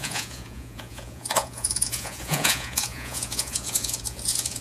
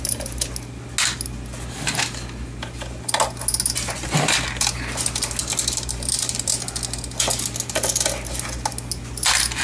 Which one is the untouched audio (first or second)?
second